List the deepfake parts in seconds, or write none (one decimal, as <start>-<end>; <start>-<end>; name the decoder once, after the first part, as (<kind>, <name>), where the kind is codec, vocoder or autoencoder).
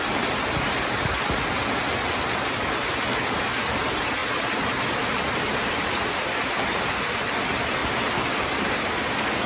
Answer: none